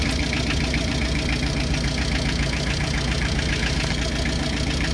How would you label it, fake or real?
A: fake